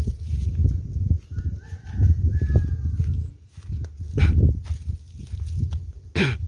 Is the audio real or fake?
real